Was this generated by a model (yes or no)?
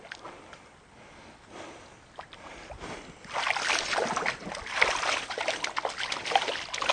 no